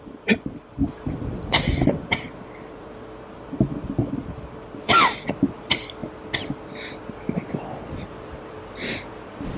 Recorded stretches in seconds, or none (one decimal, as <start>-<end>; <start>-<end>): 6.0-7.5